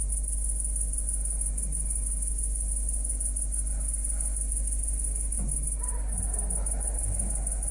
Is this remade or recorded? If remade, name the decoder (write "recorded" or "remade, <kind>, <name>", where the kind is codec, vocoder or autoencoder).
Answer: recorded